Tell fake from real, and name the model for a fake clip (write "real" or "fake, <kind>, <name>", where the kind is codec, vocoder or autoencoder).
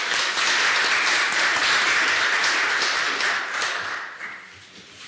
real